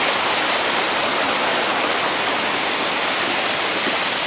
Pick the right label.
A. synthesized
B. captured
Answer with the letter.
B